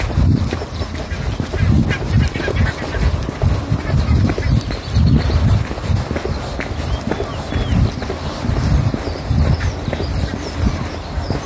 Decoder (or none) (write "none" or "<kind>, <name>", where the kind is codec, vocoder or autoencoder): none